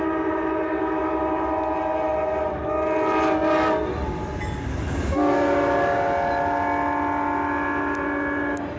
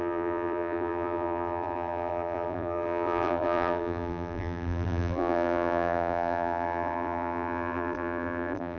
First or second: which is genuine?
first